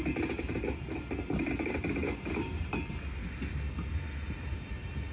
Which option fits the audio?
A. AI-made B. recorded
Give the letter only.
B